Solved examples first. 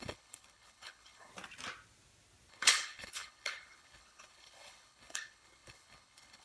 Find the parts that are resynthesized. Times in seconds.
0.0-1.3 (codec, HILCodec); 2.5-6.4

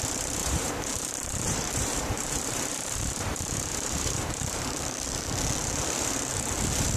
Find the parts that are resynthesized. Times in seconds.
0.4-4.6 (vocoder, BigVGAN v2)

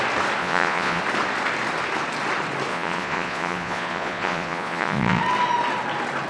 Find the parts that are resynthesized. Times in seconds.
0.4-1.0 (vocoder, Vocos); 2.7-5.2